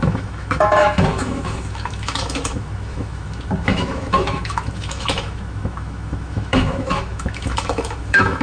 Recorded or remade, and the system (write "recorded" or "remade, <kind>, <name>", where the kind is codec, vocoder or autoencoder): remade, autoencoder, DAC-VAE